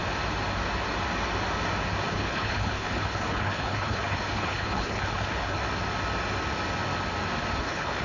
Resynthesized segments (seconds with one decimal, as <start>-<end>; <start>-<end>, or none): 2.1-5.6; 7.6-8.0